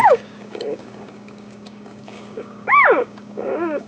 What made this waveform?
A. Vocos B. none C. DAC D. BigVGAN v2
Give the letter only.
C